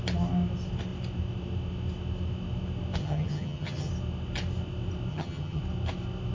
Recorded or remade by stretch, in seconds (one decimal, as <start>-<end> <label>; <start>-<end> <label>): 0.0-3.0 recorded; 3.0-3.9 remade; 3.9-5.1 recorded; 5.1-5.6 remade; 5.6-6.3 recorded